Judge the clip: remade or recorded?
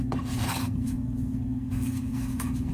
remade